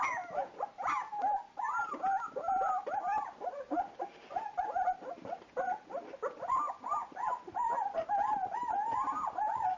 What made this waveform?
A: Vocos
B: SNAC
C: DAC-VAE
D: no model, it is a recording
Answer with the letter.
D